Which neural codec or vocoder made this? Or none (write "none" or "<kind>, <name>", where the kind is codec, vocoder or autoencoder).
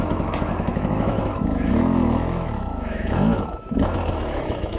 autoencoder, DAC-VAE